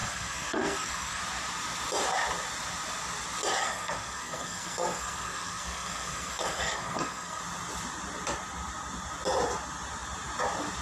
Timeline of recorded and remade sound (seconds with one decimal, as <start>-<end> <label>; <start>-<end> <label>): 0.0-1.2 remade; 1.2-3.6 recorded; 3.6-7.4 remade; 7.4-10.8 recorded